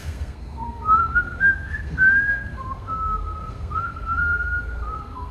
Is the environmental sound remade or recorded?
remade